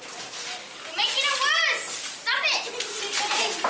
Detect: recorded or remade recorded